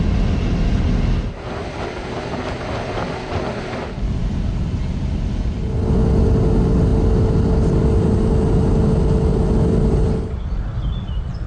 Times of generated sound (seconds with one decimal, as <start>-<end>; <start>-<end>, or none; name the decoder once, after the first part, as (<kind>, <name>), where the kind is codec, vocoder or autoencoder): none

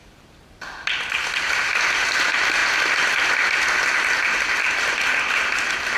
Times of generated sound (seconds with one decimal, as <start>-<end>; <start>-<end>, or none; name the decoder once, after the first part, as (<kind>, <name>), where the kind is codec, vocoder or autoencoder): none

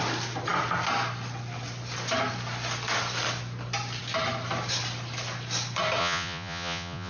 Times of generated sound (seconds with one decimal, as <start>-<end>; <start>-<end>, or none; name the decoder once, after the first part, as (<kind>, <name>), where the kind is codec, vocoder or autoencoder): 6.0-7.1 (vocoder, Vocos)